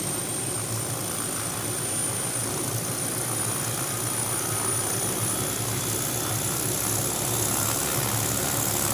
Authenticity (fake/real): real